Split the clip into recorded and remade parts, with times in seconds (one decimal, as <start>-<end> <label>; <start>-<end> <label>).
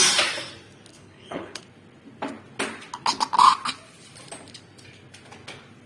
0.0-0.9 recorded; 0.9-1.6 remade; 1.6-5.9 recorded